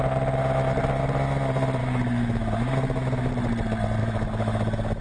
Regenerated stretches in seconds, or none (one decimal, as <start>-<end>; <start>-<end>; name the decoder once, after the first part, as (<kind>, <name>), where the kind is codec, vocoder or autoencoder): 1.8-3.3 (autoencoder, DAC-VAE); 4.0-5.0